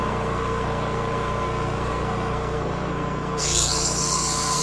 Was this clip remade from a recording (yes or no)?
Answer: yes